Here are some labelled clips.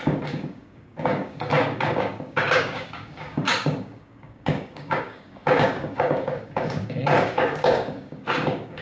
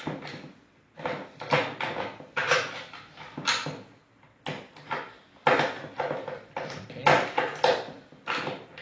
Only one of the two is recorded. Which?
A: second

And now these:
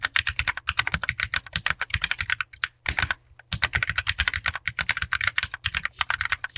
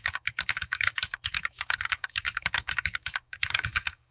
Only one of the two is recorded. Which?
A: first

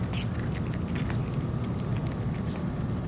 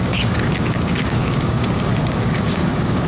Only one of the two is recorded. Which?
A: first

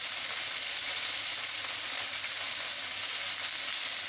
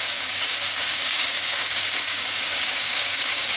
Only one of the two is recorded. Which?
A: first